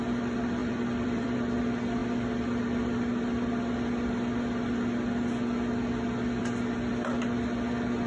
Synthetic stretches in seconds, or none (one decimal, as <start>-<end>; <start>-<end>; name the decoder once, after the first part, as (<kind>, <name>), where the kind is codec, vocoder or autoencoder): 0.6-1.6 (vocoder, BigVGAN v2)